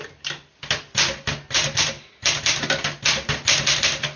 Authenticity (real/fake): real